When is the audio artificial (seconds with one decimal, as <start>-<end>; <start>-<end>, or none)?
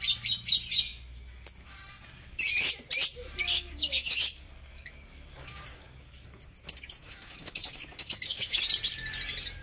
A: 3.5-8.6